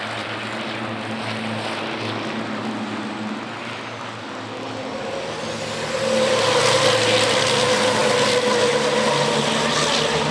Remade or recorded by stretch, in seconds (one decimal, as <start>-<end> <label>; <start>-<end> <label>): 0.0-10.3 recorded